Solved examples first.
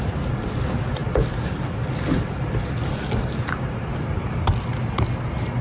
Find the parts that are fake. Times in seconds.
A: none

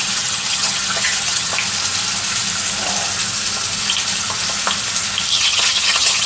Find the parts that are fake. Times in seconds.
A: 0.0-1.5 (vocoder, HiFi-GAN); 5.3-6.3

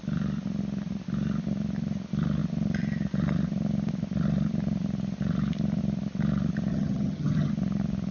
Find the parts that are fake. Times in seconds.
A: 6.7-7.5 (vocoder, HiFi-GAN)

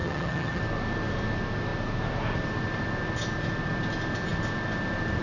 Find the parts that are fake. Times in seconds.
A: 0.0-0.6 (vocoder, HiFi-GAN)

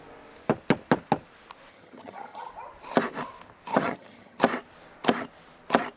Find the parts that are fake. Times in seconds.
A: 1.7-2.5 (vocoder, HiFi-GAN); 3.7-4.4

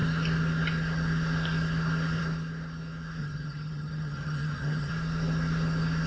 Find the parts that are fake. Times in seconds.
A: 3.2-4.9 (vocoder, HiFi-GAN)

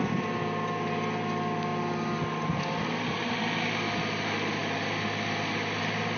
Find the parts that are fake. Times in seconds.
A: none

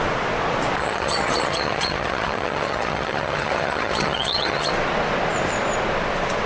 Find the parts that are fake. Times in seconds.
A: 0.8-4.7 (vocoder, HiFi-GAN)